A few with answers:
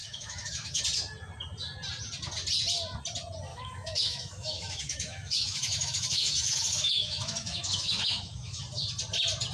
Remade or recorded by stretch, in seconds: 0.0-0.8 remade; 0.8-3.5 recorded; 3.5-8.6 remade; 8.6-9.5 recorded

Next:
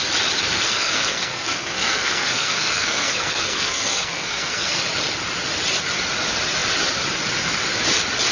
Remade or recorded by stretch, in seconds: 0.0-0.4 recorded; 0.4-4.8 remade; 4.8-8.3 recorded

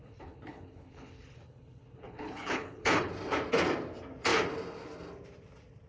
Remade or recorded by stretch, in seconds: 0.0-3.1 remade; 3.1-5.9 recorded

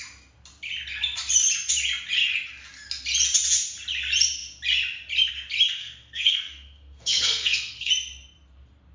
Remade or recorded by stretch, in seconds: 0.0-5.8 recorded; 5.8-7.9 remade; 7.9-8.9 recorded

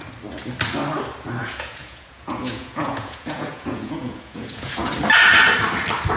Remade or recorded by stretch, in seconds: 0.0-1.4 recorded; 1.4-4.9 remade; 4.9-6.2 recorded

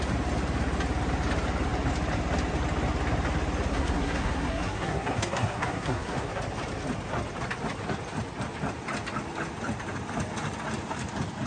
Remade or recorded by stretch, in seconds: 0.0-3.7 recorded; 3.7-6.4 remade; 6.4-11.5 recorded

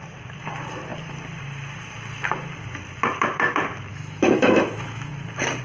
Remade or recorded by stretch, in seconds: 0.0-3.9 recorded; 3.9-5.1 remade; 5.1-5.6 recorded